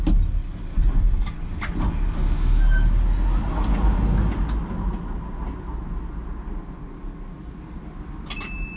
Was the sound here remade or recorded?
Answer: recorded